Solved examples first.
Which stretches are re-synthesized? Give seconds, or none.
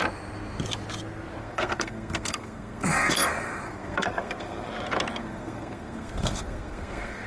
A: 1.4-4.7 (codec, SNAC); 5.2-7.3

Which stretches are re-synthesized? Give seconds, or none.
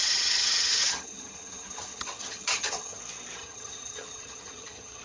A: 0.0-3.0 (vocoder, HiFi-GAN); 3.4-5.0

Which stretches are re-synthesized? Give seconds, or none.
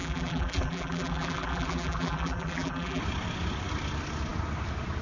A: 0.0-3.0 (vocoder, BigVGAN v2)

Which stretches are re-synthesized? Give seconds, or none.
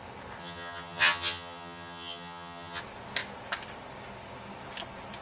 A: 0.4-2.8 (vocoder, HiFi-GAN)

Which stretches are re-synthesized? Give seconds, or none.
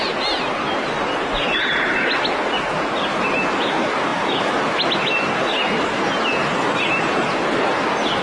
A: none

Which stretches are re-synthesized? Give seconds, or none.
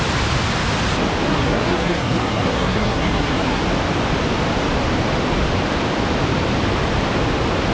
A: 1.3-3.6 (codec, SNAC)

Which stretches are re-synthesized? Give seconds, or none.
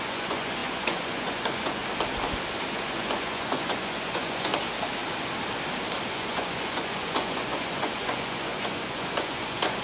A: 0.0-1.8 (vocoder, Vocos); 2.7-4.5; 6.1-9.8